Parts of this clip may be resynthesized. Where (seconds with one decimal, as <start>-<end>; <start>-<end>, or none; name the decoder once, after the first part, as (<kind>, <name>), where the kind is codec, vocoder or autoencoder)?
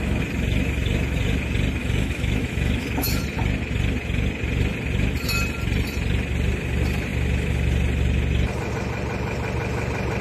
1.8-3.2 (autoencoder, DAC-VAE)